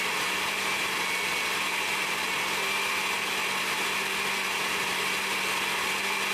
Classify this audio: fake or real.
real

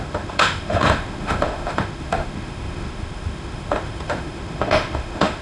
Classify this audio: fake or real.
fake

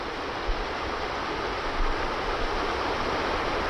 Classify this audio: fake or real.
real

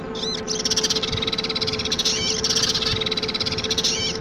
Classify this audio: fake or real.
real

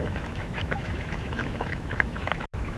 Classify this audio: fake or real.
fake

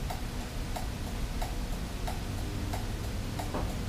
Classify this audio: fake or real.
real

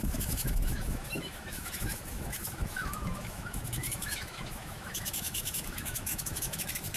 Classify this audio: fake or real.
fake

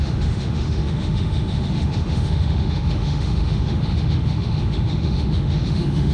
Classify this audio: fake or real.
fake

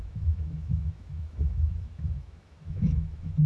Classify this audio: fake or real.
fake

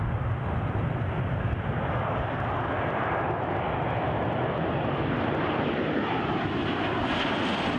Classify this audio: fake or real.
real